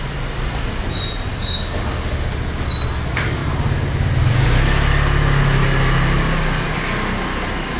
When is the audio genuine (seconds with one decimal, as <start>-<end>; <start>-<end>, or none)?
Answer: 0.0-1.3; 2.3-7.8